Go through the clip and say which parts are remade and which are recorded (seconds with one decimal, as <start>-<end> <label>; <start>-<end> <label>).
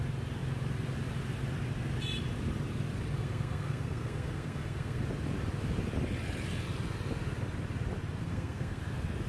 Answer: 0.0-3.2 recorded; 3.2-5.0 remade; 5.0-8.2 recorded; 8.2-8.8 remade; 8.8-9.3 recorded